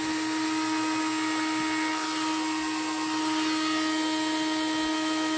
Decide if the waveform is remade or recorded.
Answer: recorded